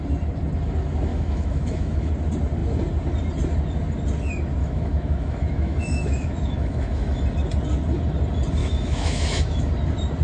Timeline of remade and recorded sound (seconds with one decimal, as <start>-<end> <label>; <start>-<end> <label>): 0.0-1.1 recorded; 1.1-2.1 remade; 2.1-4.6 recorded; 4.6-7.2 remade; 7.2-8.6 recorded; 8.6-9.7 remade; 9.7-10.2 recorded